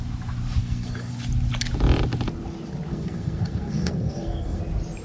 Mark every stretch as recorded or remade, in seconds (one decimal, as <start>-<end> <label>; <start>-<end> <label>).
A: 0.0-0.6 recorded; 0.6-1.1 remade; 1.1-2.9 recorded; 2.9-4.6 remade; 4.6-5.0 recorded

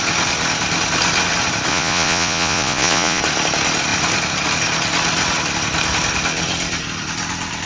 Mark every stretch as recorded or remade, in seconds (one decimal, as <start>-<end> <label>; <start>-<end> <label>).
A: 0.0-1.7 recorded; 1.7-3.2 remade; 3.2-7.7 recorded

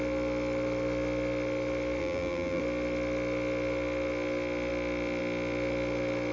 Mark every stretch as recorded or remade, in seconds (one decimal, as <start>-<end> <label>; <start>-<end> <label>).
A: 0.0-2.0 recorded; 2.0-2.6 remade; 2.6-6.3 recorded